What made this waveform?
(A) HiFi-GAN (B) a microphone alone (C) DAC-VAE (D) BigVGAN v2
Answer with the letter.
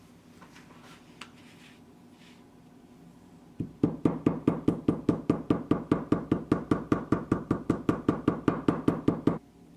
B